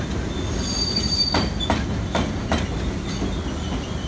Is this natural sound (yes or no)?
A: yes